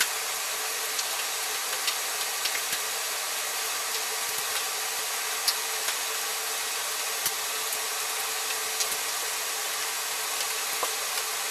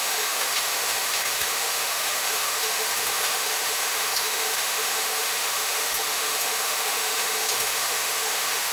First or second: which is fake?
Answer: second